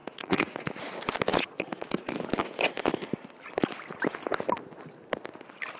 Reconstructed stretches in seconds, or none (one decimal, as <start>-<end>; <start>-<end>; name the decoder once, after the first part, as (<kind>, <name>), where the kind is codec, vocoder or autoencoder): 0.0-0.7 (vocoder, Vocos); 1.3-2.1